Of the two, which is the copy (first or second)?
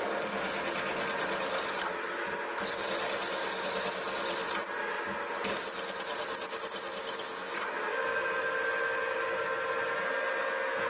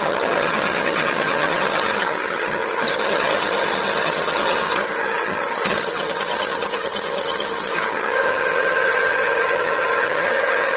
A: second